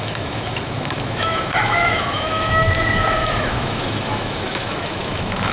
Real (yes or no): no